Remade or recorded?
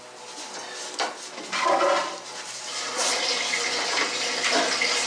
recorded